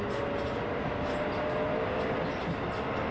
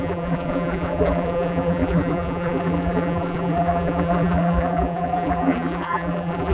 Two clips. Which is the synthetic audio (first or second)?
second